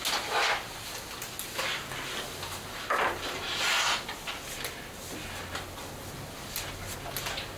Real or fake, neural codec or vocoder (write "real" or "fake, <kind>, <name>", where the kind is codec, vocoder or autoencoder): real